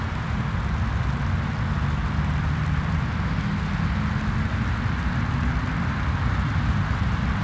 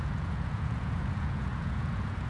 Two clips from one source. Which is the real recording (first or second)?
first